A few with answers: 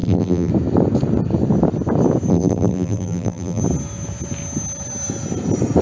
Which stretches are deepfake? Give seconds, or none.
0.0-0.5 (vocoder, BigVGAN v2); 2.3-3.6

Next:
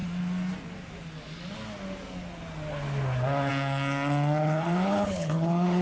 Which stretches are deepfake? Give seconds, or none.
4.4-5.8 (codec, HILCodec)

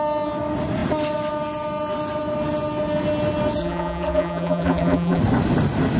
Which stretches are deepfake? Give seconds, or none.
3.6-5.2 (vocoder, BigVGAN v2)

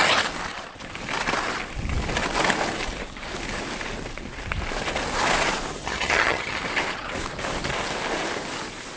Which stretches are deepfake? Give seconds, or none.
5.8-6.6 (vocoder, HiFi-GAN)

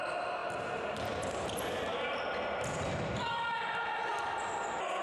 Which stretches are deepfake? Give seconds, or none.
none

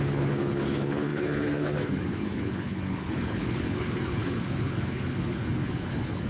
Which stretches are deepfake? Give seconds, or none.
0.0-6.3 (codec, HILCodec)

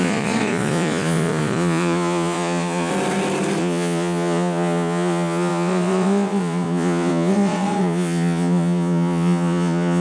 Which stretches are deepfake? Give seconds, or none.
0.0-2.9 (vocoder, Vocos); 3.6-10.0

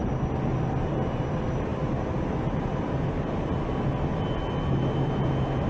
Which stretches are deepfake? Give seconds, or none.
none